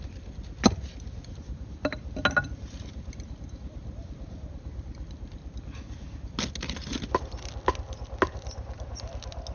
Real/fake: real